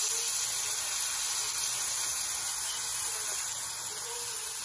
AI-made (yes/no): no